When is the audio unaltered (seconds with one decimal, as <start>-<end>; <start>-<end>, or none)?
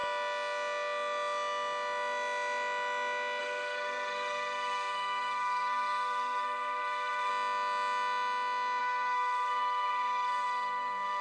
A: 0.0-3.4; 7.3-8.8